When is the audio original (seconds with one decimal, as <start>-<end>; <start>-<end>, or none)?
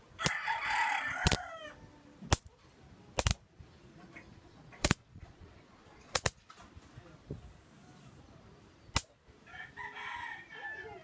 0.0-4.3; 6.6-11.0